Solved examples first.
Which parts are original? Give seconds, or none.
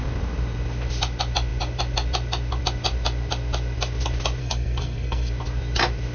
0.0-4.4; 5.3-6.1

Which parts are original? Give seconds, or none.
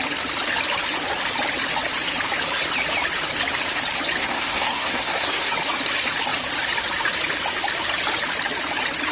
0.0-4.2; 5.5-9.1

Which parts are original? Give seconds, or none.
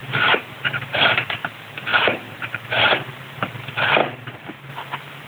1.0-1.9; 3.5-4.0; 4.7-5.3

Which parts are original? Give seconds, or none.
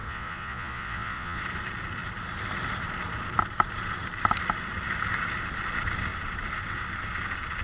1.4-7.6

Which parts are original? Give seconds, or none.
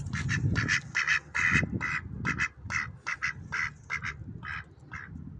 0.0-5.4